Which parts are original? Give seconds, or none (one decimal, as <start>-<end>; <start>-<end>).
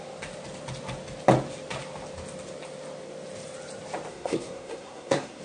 0.0-4.1